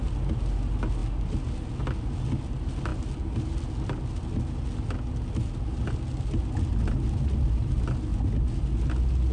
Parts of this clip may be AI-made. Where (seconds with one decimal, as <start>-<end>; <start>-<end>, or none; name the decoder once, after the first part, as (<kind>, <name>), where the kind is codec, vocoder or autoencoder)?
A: none